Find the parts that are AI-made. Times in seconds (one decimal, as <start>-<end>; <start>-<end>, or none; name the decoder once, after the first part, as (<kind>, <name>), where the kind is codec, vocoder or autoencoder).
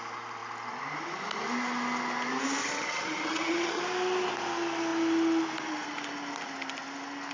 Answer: 2.6-3.8 (vocoder, HiFi-GAN)